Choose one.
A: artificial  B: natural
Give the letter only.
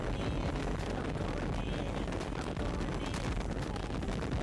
B